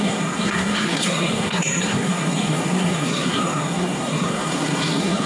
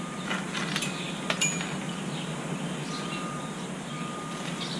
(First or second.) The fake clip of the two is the first